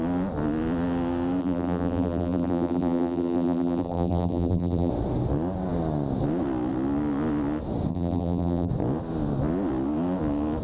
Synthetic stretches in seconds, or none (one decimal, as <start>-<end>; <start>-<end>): 1.4-4.9; 7.9-8.7